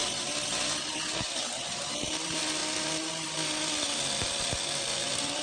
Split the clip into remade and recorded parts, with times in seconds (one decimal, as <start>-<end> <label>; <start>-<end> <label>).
0.0-5.4 recorded